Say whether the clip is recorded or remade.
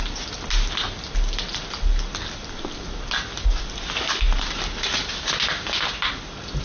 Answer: recorded